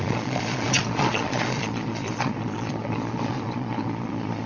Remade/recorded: remade